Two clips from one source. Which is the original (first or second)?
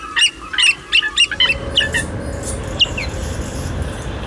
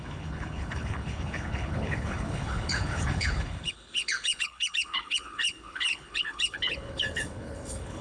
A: first